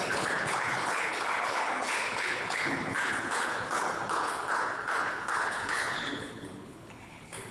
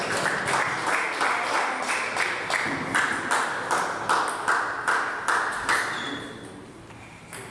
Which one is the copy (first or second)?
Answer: first